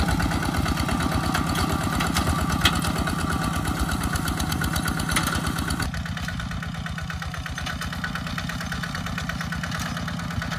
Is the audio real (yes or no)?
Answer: yes